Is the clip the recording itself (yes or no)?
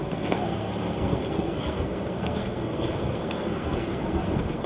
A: no